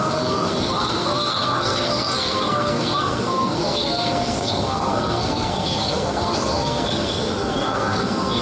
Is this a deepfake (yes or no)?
yes